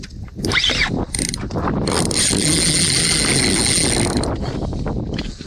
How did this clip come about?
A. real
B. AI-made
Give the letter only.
A